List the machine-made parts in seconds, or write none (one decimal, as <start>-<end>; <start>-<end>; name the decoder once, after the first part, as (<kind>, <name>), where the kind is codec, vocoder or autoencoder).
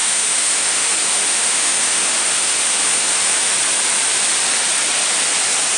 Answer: 0.0-3.5 (autoencoder, DAC-VAE)